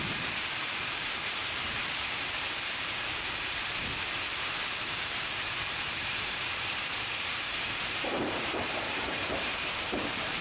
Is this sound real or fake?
fake